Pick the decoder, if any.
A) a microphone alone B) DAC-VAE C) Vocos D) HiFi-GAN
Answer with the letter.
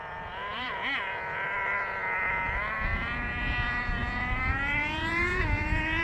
C